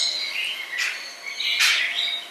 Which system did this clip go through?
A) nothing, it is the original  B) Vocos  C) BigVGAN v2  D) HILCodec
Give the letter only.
A